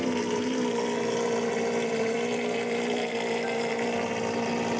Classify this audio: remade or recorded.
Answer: recorded